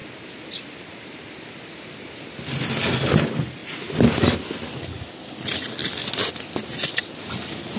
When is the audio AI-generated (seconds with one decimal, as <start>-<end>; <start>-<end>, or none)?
none